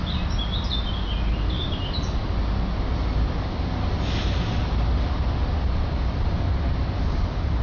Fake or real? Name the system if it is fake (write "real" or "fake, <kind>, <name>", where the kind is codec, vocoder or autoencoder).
real